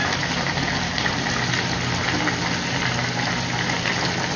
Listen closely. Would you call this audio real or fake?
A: real